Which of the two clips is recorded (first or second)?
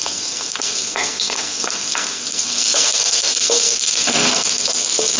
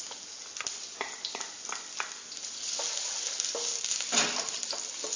second